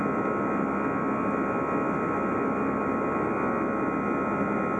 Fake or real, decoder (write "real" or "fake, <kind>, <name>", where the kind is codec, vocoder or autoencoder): real